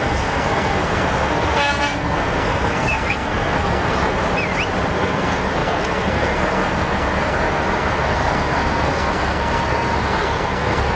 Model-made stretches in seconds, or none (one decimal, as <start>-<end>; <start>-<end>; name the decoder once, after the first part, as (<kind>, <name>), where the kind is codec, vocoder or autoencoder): 0.0-4.2 (codec, SNAC); 4.9-11.0